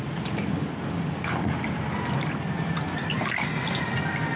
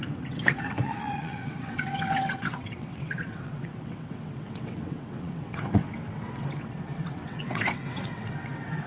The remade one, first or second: second